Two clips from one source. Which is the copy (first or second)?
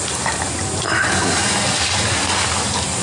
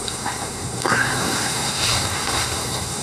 second